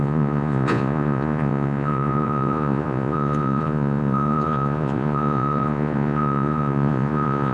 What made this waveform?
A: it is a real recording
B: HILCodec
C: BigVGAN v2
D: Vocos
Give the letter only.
D